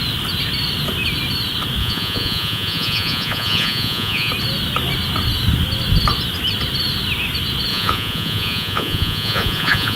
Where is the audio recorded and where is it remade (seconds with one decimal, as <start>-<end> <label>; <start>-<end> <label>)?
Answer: 0.0-1.8 recorded; 1.8-4.3 remade; 4.3-7.7 recorded; 7.7-10.0 remade